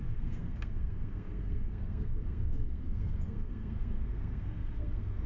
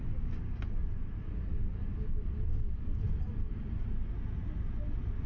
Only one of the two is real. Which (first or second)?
second